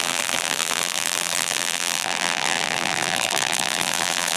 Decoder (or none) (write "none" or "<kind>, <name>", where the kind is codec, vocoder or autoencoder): vocoder, BigVGAN v2